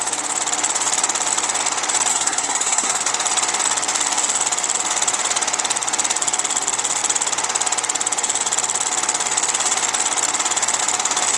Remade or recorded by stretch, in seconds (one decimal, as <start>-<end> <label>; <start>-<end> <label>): 0.0-2.1 recorded; 2.1-3.1 remade; 3.1-11.4 recorded